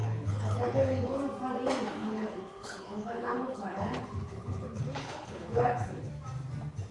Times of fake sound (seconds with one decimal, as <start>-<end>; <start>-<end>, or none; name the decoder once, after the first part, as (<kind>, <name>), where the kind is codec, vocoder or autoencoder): 0.0-1.2 (codec, HILCodec); 2.0-6.1